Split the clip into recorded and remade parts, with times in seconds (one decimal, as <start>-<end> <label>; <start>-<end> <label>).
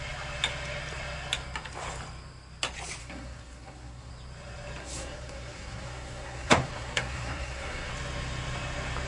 0.0-3.0 recorded; 3.0-4.1 remade; 4.1-4.8 recorded; 4.8-7.9 remade; 7.9-9.1 recorded